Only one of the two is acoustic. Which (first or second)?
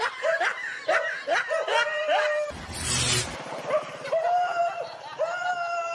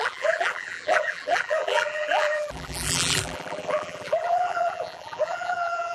first